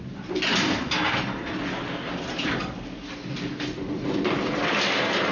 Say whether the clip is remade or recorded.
recorded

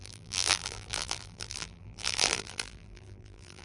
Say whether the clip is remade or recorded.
remade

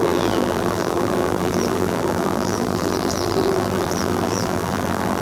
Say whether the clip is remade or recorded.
remade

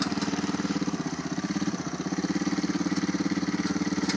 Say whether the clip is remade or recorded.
remade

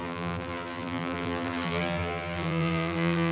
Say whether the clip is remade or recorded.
remade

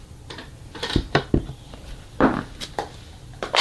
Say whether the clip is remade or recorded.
remade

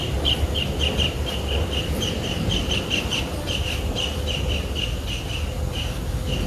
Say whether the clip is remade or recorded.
recorded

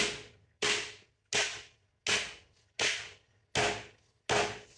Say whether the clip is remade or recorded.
recorded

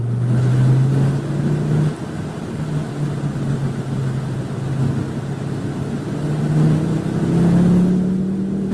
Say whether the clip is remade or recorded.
recorded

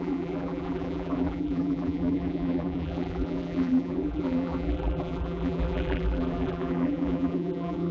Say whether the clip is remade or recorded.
remade